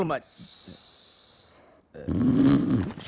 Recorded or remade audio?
remade